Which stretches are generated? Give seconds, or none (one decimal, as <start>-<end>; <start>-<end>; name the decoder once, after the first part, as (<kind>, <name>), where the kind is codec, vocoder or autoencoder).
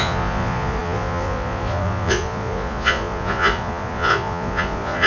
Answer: 0.0-5.1 (vocoder, Vocos)